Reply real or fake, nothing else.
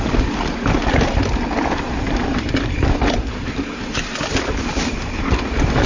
real